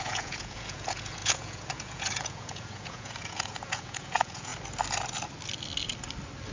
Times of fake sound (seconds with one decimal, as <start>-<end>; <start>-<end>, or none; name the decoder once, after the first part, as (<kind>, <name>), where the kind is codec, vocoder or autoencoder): 0.0-4.5 (vocoder, Vocos)